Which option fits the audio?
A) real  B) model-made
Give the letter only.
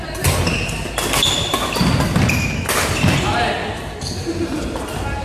A